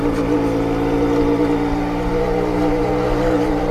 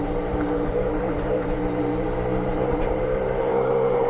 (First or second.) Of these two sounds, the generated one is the second